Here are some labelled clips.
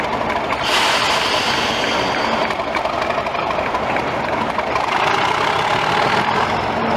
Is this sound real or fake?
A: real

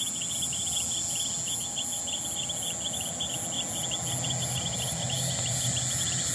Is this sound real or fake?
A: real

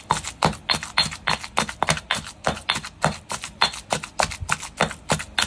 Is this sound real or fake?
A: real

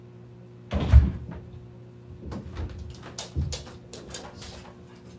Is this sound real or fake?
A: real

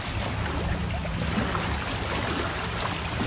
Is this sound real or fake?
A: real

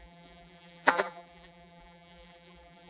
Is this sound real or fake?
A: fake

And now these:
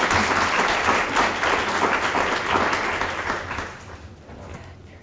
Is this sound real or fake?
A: real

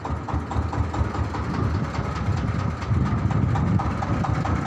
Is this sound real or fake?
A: real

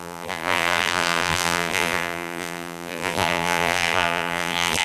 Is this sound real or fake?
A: fake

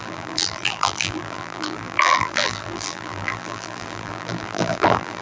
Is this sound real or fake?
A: fake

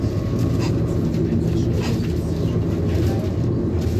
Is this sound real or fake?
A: real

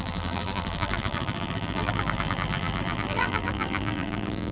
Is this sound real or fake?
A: fake